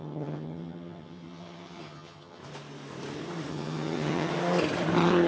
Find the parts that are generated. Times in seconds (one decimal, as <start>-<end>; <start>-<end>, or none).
0.0-2.4; 3.5-4.3